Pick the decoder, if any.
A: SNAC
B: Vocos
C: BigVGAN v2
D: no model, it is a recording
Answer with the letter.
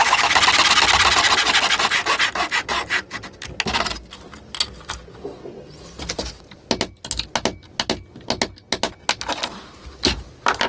D